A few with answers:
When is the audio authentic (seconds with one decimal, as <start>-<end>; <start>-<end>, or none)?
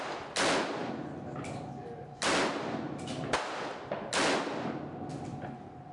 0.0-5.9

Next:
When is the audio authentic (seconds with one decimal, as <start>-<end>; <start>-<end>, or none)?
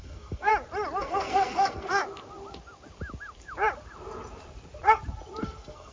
0.5-1.0; 2.0-5.4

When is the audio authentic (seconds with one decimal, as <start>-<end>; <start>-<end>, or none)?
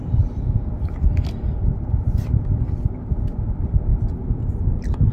0.0-5.1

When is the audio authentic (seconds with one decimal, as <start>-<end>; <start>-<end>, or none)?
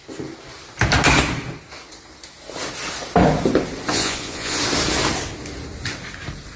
0.0-3.9; 4.6-6.6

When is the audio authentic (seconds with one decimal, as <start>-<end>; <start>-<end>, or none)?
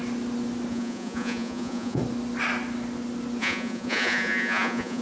0.0-0.7; 2.0-3.4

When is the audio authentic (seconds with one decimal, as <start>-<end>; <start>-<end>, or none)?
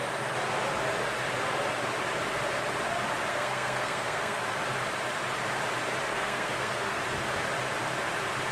0.0-3.3; 4.4-6.1; 7.0-8.5